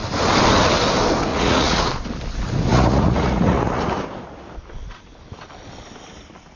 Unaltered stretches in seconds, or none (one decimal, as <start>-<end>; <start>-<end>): 0.0-1.3; 1.9-2.7; 3.8-6.6